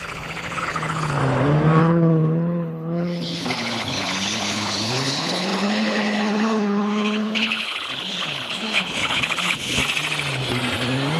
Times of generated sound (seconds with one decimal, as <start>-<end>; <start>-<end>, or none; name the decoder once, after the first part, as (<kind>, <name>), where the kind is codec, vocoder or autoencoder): 0.0-1.2 (codec, HILCodec); 1.8-9.8